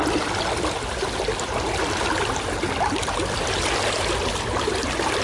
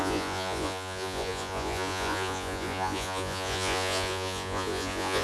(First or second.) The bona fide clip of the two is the first